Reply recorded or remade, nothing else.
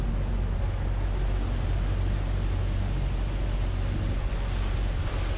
recorded